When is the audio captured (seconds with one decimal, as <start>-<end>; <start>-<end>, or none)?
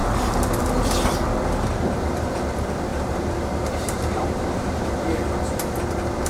0.6-2.9; 4.5-6.3